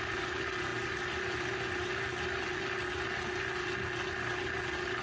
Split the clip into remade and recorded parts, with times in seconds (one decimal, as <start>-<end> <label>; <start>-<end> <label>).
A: 0.0-5.0 recorded